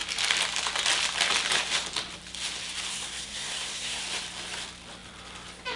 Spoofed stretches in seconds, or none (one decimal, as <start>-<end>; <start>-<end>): 2.9-4.0